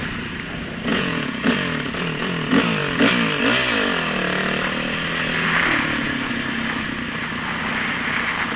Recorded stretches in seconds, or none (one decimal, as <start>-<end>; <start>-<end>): 0.0-0.9; 1.5-8.6